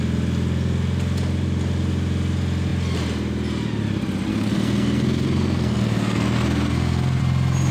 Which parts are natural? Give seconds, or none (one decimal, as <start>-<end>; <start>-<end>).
0.0-4.3; 7.2-7.7

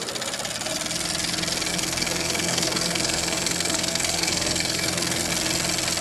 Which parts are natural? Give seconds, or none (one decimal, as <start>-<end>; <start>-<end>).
0.0-1.7; 5.3-6.0

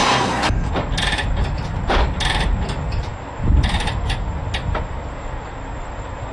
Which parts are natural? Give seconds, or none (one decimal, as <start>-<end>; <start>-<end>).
0.7-6.3